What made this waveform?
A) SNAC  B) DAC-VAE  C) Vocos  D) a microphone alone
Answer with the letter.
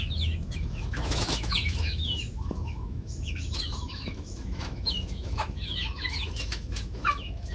B